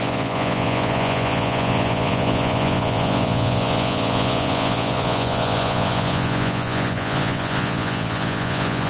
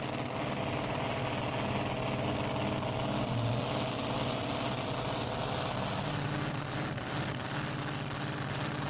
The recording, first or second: second